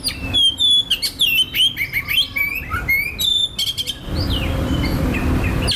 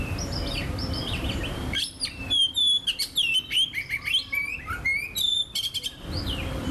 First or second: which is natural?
first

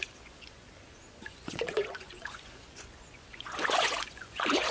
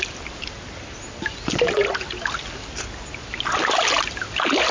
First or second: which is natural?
second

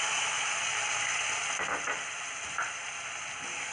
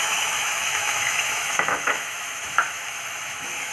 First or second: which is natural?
first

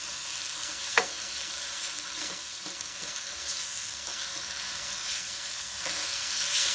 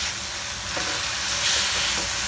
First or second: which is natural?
second